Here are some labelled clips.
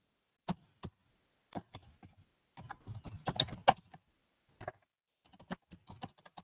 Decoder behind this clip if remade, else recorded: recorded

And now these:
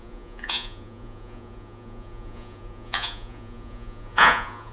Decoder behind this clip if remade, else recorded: remade, vocoder, Vocos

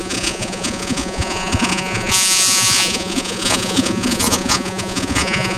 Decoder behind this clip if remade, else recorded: remade, vocoder, Vocos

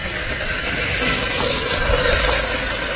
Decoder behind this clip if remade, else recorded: recorded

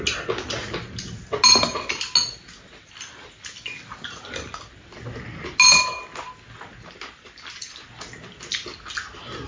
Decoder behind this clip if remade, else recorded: recorded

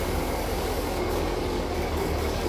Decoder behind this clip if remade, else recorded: remade, codec, DAC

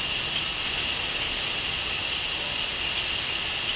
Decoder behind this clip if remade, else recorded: recorded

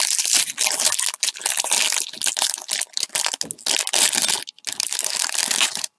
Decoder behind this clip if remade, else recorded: recorded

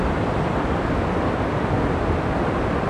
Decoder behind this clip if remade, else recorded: recorded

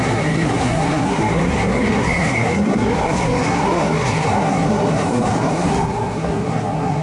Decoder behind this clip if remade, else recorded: remade, codec, SNAC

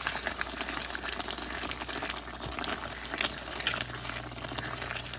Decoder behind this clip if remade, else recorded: recorded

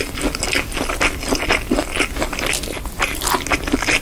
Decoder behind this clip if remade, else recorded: recorded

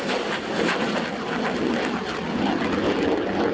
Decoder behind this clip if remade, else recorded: recorded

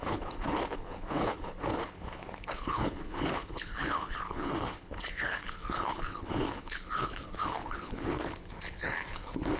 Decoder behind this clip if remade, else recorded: remade, codec, HILCodec